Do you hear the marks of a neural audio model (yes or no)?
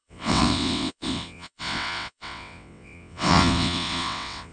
yes